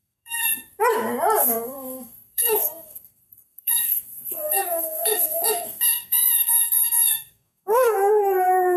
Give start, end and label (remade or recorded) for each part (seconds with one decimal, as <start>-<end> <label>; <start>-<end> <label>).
0.0-0.7 remade; 0.7-1.4 recorded; 1.4-8.8 remade